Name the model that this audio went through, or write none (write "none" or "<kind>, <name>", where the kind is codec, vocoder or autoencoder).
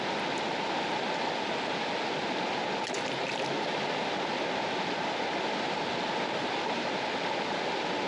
none